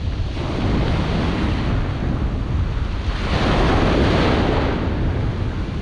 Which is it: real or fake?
real